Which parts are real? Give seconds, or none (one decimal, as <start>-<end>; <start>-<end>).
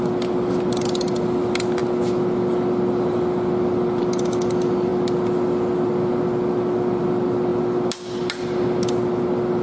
0.0-9.6